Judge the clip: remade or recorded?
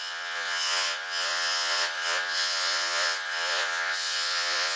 remade